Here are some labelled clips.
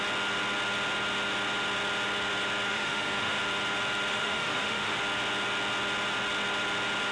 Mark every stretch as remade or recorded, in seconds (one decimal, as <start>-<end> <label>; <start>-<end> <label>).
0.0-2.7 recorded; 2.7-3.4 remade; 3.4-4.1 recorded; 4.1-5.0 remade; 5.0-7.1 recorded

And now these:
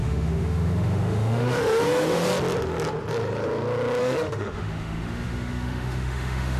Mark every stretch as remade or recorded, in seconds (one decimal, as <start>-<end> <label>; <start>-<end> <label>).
0.0-2.3 remade; 2.3-4.0 recorded; 4.0-6.6 remade

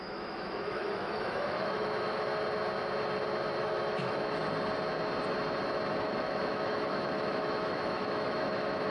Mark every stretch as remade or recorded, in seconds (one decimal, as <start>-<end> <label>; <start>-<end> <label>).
0.0-2.3 remade; 2.3-3.6 recorded; 3.6-4.4 remade; 4.4-5.9 recorded; 5.9-8.9 remade

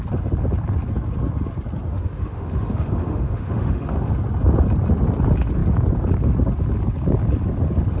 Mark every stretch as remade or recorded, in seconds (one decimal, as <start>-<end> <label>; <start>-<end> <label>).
0.0-1.9 recorded; 1.9-4.1 remade; 4.1-8.0 recorded

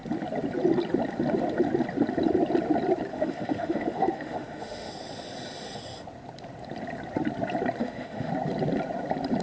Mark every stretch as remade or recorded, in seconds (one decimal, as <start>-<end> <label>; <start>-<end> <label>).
0.0-3.1 recorded; 3.1-4.9 remade; 4.9-7.8 recorded; 7.8-8.3 remade; 8.3-9.4 recorded